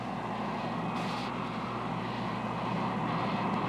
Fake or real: real